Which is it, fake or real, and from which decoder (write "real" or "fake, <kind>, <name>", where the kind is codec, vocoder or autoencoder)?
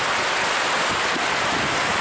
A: real